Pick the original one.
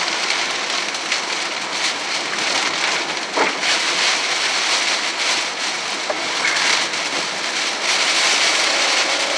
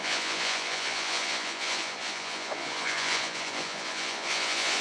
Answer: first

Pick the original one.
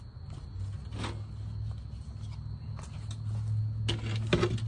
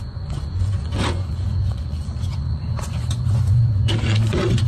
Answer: first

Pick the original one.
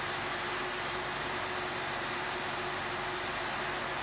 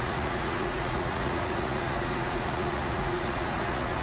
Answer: first